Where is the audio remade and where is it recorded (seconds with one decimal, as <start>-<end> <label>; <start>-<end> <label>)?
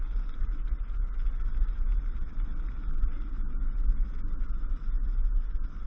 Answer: 0.0-5.9 recorded